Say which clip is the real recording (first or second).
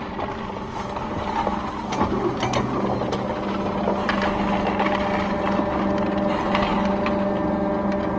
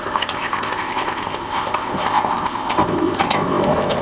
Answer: first